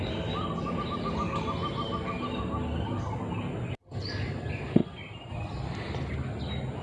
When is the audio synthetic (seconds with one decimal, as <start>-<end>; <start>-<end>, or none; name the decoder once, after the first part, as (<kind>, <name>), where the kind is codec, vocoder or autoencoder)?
none